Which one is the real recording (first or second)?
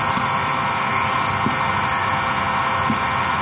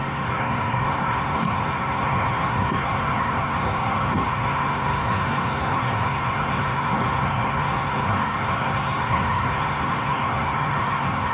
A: first